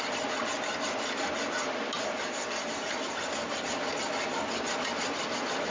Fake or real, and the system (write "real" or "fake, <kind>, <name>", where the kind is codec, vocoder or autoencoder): real